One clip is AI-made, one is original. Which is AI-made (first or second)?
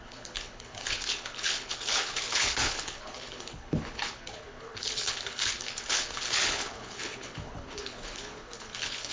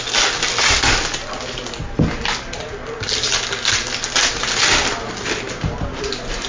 first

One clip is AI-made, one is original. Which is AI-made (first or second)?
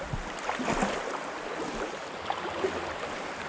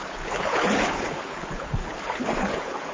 second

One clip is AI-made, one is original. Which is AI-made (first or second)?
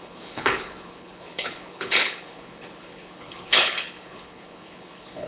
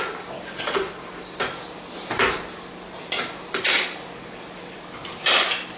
first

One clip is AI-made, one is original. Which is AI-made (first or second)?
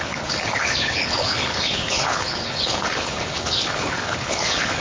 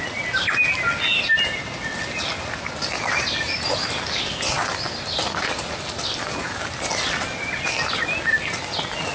first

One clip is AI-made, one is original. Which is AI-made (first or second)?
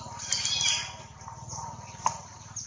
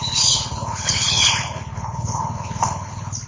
second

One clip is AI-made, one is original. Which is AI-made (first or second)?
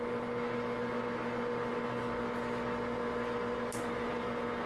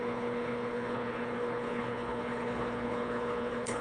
second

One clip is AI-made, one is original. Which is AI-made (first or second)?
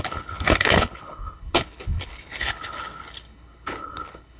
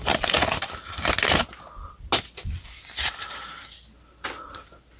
first